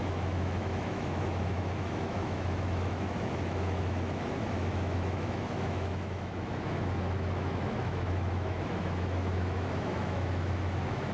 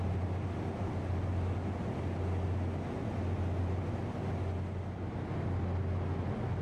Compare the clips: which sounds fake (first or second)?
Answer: first